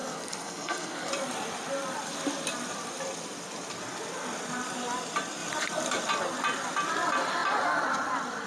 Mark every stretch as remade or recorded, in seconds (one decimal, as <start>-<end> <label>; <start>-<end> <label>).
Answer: 0.0-1.1 remade; 1.1-8.5 recorded